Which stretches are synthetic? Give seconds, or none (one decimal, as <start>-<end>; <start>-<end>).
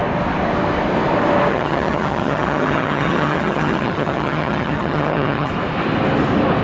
1.5-5.5